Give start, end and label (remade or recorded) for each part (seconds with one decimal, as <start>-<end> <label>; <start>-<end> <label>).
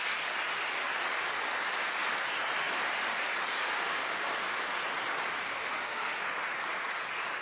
0.0-3.6 recorded; 3.6-4.3 remade; 4.3-5.4 recorded; 5.4-6.2 remade; 6.2-7.4 recorded